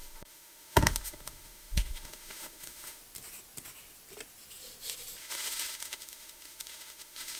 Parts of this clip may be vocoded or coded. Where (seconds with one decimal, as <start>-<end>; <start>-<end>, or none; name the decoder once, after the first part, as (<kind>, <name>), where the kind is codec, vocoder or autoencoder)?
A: 0.0-3.0 (autoencoder, DAC-VAE); 5.2-7.4